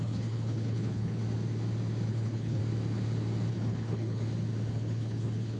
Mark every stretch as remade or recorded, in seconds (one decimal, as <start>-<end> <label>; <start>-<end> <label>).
0.0-1.2 remade; 1.2-2.1 recorded; 2.1-2.6 remade; 2.6-3.5 recorded; 3.5-4.2 remade; 4.2-4.7 recorded; 4.7-5.6 remade